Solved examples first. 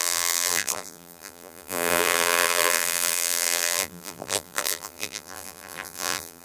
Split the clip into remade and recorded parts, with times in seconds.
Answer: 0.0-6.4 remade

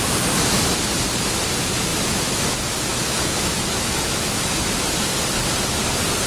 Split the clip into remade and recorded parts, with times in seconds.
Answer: 0.0-1.9 recorded; 1.9-2.4 remade; 2.4-2.9 recorded; 2.9-4.7 remade; 4.7-6.3 recorded

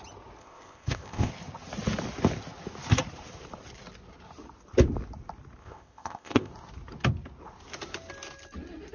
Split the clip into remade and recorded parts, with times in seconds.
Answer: 0.0-0.4 recorded; 0.4-1.3 remade; 1.3-5.6 recorded; 5.6-6.5 remade; 6.5-8.9 recorded

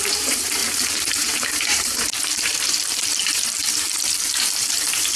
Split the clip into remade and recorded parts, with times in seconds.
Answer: 0.0-5.2 remade